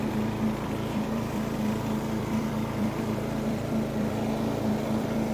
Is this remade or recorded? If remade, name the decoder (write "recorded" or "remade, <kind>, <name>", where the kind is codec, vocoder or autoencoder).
remade, vocoder, BigVGAN v2